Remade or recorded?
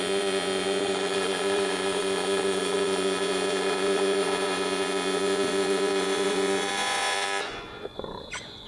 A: remade